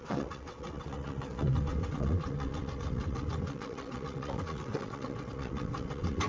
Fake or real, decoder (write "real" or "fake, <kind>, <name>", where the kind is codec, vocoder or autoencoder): fake, vocoder, WaveNeXt